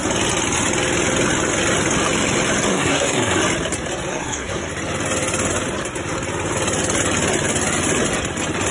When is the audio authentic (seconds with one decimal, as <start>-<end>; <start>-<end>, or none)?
0.0-2.7; 3.4-4.1; 4.7-8.7